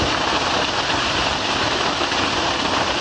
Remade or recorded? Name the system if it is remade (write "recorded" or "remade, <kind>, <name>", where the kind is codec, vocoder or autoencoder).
recorded